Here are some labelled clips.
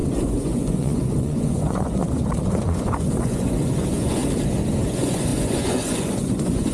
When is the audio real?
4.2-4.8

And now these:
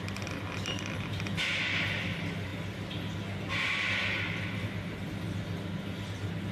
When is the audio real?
0.0-6.5

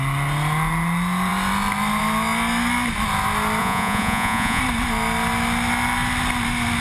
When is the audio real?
0.0-3.6; 4.6-6.8

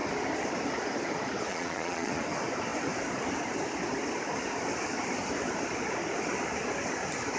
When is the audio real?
0.0-1.5; 2.2-7.4

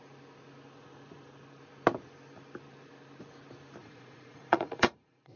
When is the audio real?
0.0-3.8

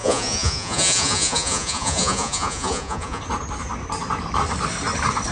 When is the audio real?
3.2-5.3